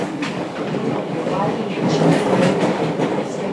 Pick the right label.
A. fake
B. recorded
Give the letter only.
A